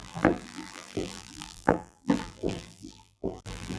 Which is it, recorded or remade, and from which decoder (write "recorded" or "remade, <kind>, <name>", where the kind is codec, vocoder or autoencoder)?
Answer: remade, vocoder, BigVGAN v2